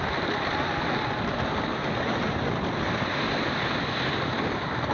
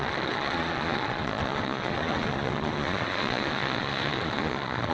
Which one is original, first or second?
first